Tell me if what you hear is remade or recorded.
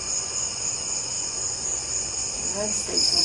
remade